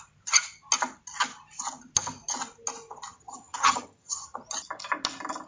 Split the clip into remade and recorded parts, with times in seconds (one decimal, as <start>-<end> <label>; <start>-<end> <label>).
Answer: 0.0-3.1 recorded; 3.1-4.4 remade; 4.4-5.5 recorded